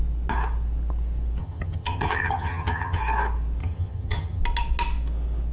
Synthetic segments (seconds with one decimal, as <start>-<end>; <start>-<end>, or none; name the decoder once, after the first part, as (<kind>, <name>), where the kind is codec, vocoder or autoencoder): 1.4-3.0 (vocoder, HiFi-GAN); 3.6-4.4